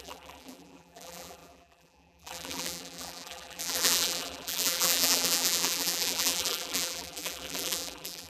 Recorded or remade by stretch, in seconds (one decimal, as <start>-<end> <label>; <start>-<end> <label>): 0.0-8.3 remade

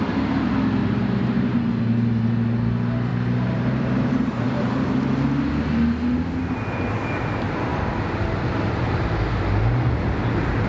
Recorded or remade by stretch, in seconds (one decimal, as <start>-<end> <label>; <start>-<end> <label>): 0.0-0.8 recorded; 0.8-1.6 remade; 1.6-3.1 recorded; 3.1-4.7 remade; 4.7-10.7 recorded

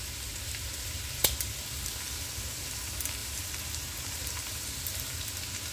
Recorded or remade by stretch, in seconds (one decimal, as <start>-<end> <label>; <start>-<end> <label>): 0.0-3.2 recorded; 3.2-5.0 remade; 5.0-5.7 recorded